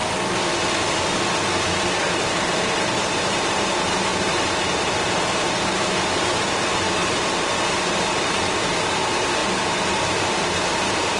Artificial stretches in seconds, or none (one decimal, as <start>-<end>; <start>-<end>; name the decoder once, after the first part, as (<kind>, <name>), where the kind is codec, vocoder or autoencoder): 1.9-7.0 (vocoder, BigVGAN v2); 8.3-11.2